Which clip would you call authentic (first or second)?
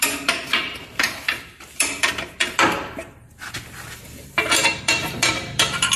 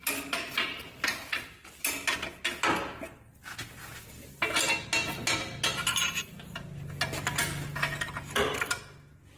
second